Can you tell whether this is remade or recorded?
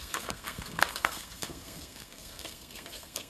remade